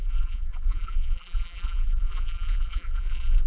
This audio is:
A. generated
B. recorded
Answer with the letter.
A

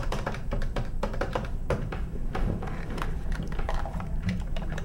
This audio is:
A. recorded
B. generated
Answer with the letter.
B